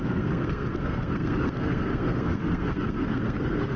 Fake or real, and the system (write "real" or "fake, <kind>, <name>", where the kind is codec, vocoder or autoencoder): fake, codec, SNAC